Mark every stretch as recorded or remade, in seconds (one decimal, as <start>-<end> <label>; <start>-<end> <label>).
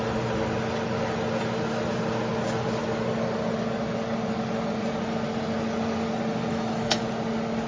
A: 0.0-6.5 recorded; 6.5-7.0 remade; 7.0-7.7 recorded